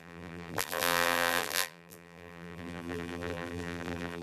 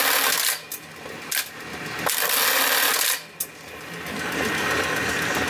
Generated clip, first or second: first